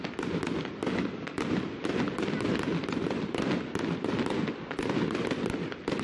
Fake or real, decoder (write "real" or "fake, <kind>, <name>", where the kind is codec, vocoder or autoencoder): real